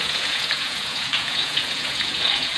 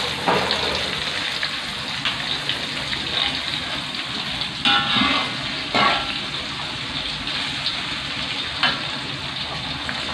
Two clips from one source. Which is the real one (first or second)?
second